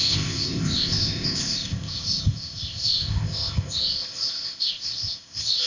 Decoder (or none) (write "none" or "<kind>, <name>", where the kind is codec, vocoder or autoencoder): codec, ZipCodec